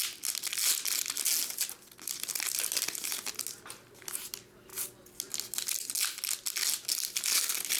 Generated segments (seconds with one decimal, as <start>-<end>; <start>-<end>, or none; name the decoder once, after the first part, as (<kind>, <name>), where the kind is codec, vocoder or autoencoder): none

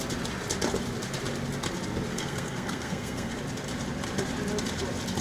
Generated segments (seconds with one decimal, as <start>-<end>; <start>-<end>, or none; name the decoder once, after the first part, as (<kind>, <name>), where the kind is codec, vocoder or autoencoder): 2.1-3.3 (codec, SNAC)

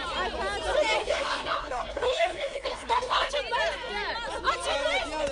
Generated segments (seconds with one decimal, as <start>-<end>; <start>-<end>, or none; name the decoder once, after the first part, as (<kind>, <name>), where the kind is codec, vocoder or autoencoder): 1.0-3.3 (codec, SNAC)

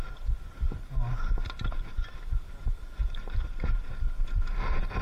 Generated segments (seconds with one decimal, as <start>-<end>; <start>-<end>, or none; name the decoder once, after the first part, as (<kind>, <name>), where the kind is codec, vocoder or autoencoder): 3.0-3.8 (vocoder, BigVGAN v2)

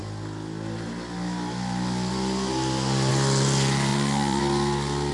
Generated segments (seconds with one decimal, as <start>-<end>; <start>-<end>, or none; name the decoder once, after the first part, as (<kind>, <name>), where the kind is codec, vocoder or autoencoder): 3.9-4.4 (vocoder, Vocos)

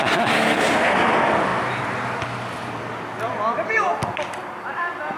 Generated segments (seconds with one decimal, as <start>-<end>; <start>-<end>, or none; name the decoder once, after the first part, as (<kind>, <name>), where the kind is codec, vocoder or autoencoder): none

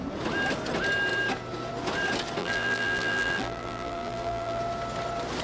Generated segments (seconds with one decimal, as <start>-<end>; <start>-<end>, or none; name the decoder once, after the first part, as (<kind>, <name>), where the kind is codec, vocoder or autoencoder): 2.4-4.6 (vocoder, BigVGAN v2)

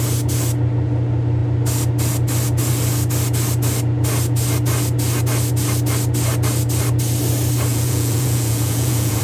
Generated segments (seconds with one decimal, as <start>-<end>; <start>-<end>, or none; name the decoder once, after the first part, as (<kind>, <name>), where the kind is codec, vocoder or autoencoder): 7.7-9.2 (vocoder, Vocos)